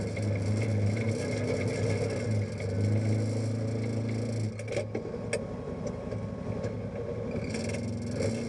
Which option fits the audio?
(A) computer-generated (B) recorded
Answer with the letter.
B